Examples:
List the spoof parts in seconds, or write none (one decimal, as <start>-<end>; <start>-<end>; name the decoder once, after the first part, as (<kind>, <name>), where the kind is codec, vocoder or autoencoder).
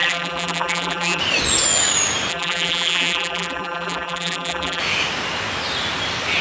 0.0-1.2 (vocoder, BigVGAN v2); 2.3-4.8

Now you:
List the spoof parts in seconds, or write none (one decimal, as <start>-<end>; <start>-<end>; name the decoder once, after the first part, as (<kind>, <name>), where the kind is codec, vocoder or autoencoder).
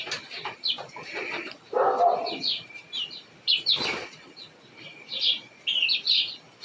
0.0-4.0 (vocoder, BigVGAN v2)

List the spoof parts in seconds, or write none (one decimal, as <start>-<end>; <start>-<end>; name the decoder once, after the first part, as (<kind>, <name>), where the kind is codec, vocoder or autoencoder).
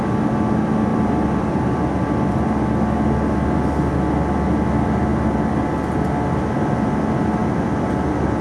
0.9-1.8 (vocoder, BigVGAN v2); 7.4-8.4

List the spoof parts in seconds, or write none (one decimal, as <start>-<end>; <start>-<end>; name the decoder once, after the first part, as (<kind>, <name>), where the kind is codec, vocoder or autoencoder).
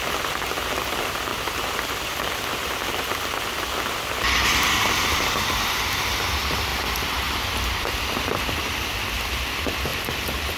0.0-6.7 (vocoder, BigVGAN v2); 7.6-10.6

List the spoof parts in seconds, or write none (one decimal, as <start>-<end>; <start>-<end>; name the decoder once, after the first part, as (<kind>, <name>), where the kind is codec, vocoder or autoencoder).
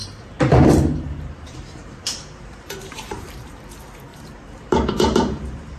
0.0-3.5 (vocoder, BigVGAN v2); 4.1-5.8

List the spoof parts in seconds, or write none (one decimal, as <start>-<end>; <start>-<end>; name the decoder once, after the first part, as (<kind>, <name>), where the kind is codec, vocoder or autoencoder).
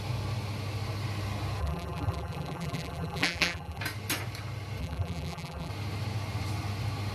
1.6-3.8 (vocoder, BigVGAN v2); 4.8-5.7